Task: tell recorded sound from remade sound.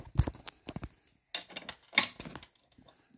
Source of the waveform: recorded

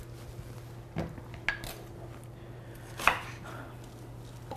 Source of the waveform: recorded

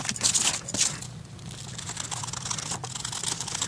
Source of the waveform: recorded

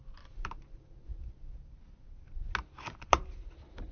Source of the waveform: recorded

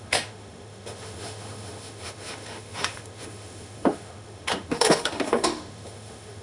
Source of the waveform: remade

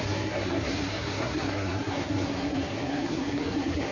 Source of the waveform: remade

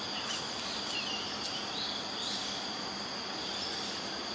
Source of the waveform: recorded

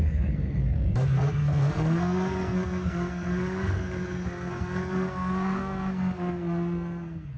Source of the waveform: remade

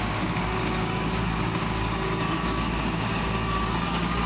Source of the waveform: remade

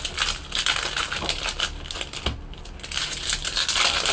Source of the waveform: recorded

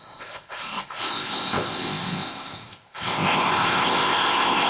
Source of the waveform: remade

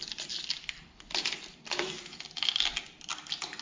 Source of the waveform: recorded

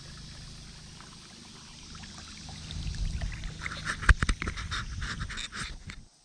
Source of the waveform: recorded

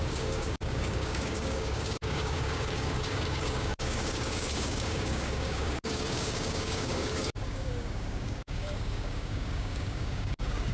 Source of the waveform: remade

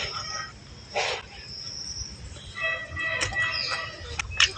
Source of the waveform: recorded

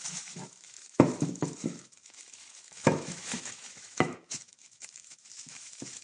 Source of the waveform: remade